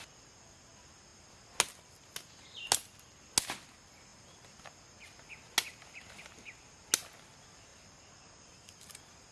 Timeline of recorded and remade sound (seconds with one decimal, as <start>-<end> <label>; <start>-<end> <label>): 0.0-9.3 recorded